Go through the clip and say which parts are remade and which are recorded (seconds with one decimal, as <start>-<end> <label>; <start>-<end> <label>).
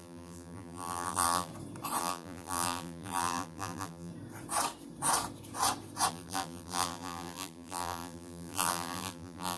0.0-1.5 remade; 1.5-2.0 recorded; 2.0-4.1 remade; 4.1-6.1 recorded; 6.1-9.6 remade